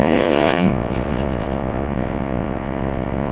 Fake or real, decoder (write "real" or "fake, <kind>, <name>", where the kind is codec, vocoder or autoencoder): fake, vocoder, Vocos